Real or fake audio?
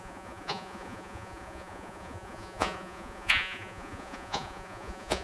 fake